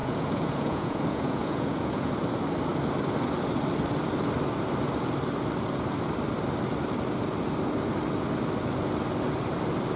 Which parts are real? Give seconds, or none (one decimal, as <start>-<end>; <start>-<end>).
2.1-10.0

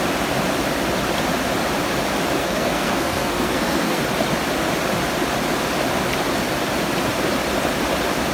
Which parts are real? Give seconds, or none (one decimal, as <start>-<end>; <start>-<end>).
0.0-2.4; 4.0-8.3